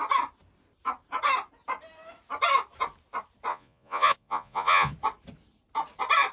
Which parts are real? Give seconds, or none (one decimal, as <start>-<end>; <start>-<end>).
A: 0.0-3.5; 4.9-6.3